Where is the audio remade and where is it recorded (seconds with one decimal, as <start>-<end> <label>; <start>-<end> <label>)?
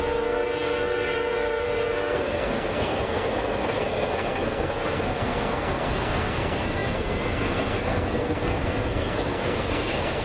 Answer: 0.0-10.2 remade